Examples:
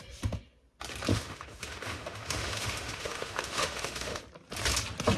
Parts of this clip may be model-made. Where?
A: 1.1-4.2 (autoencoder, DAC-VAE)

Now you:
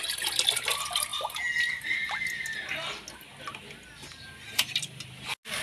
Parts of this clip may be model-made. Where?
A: none